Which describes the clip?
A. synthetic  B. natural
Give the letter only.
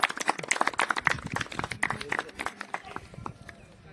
B